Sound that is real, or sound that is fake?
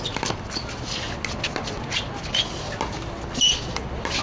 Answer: real